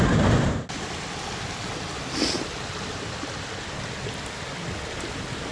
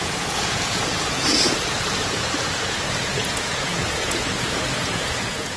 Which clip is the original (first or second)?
first